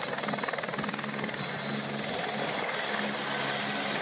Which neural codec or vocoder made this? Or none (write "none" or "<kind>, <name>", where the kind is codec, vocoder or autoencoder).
none